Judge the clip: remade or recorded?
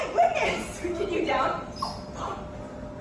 recorded